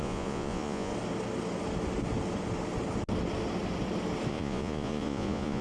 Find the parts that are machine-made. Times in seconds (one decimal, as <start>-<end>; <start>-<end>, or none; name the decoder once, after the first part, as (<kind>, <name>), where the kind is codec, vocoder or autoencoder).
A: 0.0-0.9 (vocoder, Vocos); 4.3-5.6